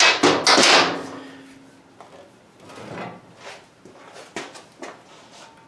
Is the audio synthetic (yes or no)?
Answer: no